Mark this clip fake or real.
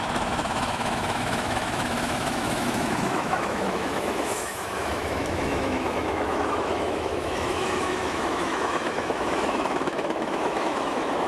fake